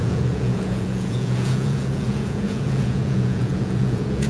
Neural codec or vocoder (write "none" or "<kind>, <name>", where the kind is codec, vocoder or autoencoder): vocoder, Vocos